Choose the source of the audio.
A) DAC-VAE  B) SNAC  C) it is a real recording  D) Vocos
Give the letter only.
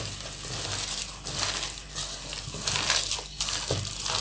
C